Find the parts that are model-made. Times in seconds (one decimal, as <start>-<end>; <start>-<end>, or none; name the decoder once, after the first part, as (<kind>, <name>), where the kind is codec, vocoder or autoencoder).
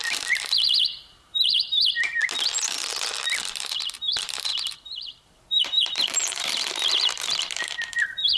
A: 0.0-2.2 (vocoder, BigVGAN v2); 3.4-8.4